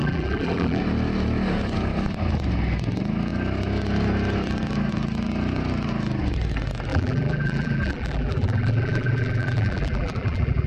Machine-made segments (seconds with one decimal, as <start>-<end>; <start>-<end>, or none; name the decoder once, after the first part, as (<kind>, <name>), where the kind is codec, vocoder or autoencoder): 0.0-0.8 (vocoder, BigVGAN v2); 6.9-10.7